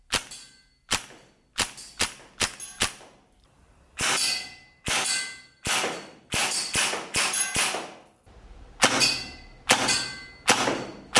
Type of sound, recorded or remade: recorded